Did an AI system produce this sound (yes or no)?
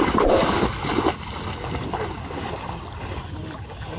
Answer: no